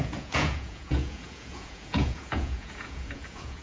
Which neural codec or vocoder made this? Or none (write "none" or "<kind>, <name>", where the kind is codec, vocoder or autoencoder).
vocoder, Vocos